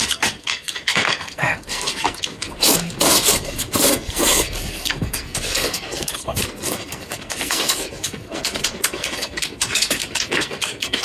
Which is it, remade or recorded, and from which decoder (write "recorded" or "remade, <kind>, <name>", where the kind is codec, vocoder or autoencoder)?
remade, codec, SNAC